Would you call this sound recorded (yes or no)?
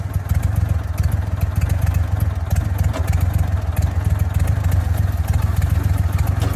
yes